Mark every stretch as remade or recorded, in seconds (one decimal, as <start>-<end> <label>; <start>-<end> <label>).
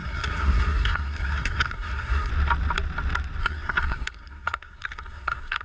0.0-2.3 remade; 2.3-3.4 recorded; 3.4-5.6 remade